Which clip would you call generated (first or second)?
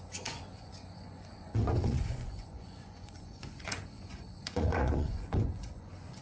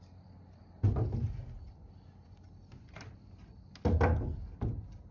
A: first